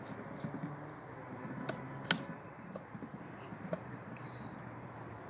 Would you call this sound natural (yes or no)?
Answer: yes